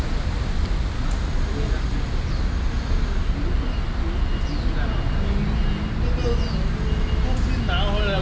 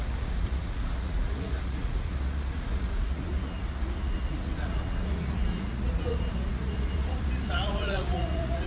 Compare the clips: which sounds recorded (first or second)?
first